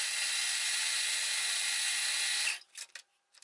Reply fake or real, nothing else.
real